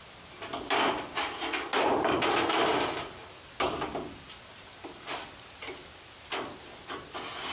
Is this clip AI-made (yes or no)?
no